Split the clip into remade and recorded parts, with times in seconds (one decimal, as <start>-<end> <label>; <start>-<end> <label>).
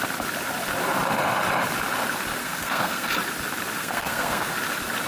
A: 0.0-2.4 recorded; 2.4-3.1 remade; 3.1-3.8 recorded; 3.8-4.5 remade; 4.5-5.1 recorded